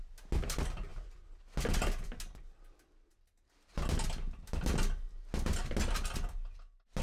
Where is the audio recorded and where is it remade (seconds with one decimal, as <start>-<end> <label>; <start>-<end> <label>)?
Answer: 0.0-7.0 recorded